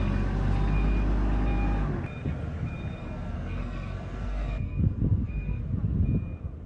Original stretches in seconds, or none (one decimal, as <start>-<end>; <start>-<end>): 0.0-3.0; 5.6-6.7